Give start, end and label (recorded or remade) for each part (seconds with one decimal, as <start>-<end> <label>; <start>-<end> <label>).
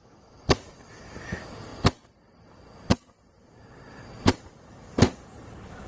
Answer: 0.0-1.7 recorded; 1.7-2.3 remade; 2.3-5.9 recorded